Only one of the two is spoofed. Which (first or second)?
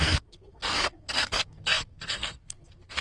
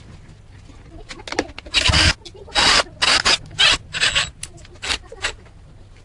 first